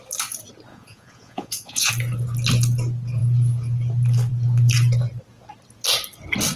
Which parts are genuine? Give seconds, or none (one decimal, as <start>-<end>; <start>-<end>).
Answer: 0.0-0.7; 1.9-6.6